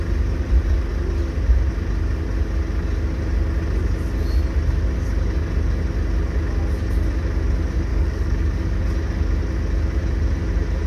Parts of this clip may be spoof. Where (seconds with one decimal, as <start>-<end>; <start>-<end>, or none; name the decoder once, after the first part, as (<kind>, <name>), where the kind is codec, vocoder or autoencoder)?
7.9-8.8 (codec, DAC)

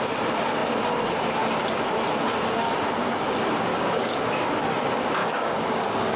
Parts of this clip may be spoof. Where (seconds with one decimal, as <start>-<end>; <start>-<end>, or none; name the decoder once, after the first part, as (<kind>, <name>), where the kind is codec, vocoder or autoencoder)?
3.7-4.5 (codec, DAC); 5.2-6.2

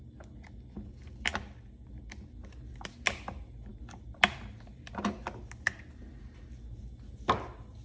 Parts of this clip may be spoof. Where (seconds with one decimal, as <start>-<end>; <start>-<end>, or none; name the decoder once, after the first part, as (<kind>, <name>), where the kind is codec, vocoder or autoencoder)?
none

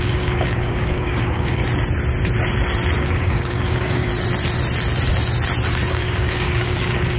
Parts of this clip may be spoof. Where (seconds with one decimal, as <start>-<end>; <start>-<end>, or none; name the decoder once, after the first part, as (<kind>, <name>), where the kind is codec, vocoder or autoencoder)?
0.0-1.6 (codec, DAC); 3.0-4.1; 5.9-7.2

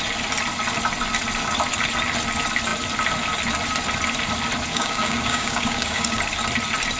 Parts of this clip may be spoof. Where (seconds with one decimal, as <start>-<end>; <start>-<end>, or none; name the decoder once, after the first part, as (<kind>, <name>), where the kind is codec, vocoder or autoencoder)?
4.7-6.2 (codec, DAC)